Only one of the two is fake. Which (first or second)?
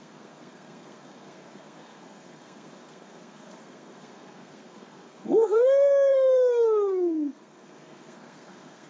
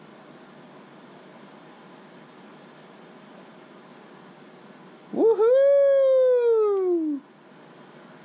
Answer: first